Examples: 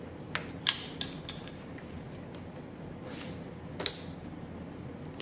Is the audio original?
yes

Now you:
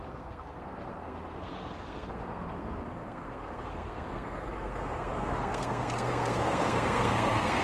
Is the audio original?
no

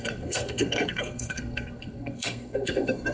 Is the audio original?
no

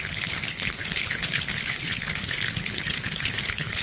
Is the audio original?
no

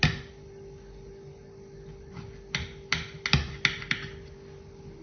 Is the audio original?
yes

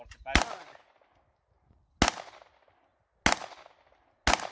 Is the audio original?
yes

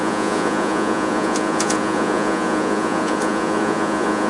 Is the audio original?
no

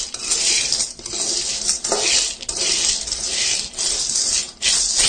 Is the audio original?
yes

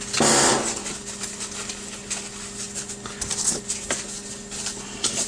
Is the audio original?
yes